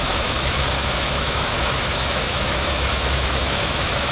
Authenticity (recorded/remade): remade